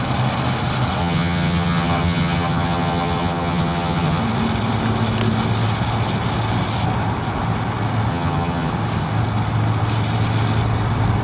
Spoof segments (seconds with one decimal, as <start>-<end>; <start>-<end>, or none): 1.0-4.2; 8.1-8.7